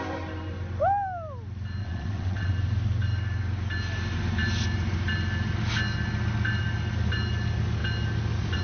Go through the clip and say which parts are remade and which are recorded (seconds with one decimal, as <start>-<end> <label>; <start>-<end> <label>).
0.0-1.8 recorded; 1.8-2.5 remade; 2.5-8.6 recorded